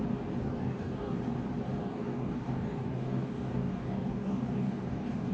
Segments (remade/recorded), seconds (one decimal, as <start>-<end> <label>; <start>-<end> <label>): 0.0-0.4 recorded; 0.4-1.2 remade; 1.2-1.8 recorded; 1.8-5.3 remade